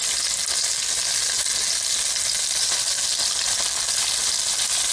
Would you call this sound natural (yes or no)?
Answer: yes